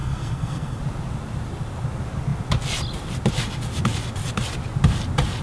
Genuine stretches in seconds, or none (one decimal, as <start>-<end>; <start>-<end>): 0.8-5.4

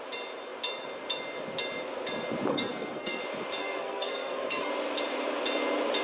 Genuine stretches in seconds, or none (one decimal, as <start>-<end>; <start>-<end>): 0.0-2.5; 3.2-3.6; 4.7-6.0

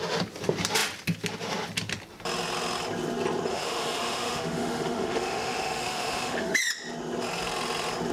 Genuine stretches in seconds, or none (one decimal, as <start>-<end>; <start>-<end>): 0.0-3.5; 6.6-8.1